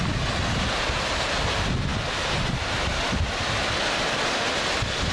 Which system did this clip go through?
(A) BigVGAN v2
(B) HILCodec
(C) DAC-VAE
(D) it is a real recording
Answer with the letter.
D